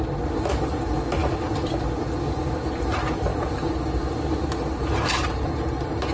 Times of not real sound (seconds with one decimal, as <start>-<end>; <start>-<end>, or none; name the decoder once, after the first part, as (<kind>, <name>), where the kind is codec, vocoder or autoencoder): 3.3-5.5 (vocoder, BigVGAN v2)